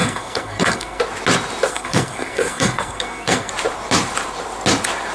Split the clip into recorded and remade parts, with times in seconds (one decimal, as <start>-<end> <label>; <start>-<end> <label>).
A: 0.0-1.0 remade; 1.0-1.7 recorded; 1.7-3.5 remade; 3.5-5.1 recorded